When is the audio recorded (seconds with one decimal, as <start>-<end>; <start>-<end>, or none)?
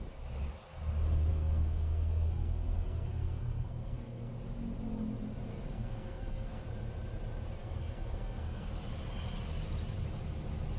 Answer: 0.0-1.3; 4.3-5.5; 6.6-7.6; 8.7-10.8